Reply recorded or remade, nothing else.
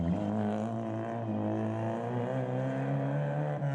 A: recorded